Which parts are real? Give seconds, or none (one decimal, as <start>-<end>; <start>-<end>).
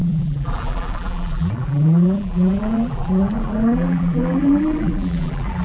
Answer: none